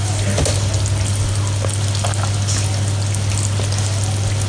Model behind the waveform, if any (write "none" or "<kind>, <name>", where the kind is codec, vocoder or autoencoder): none